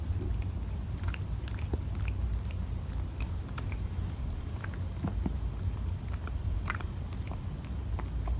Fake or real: real